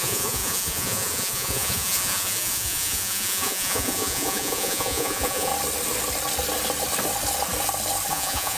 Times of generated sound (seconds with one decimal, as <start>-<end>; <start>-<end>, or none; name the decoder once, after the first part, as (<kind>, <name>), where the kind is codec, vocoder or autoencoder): 0.0-5.5 (vocoder, Vocos); 8.1-8.6